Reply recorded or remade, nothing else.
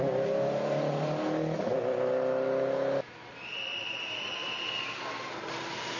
recorded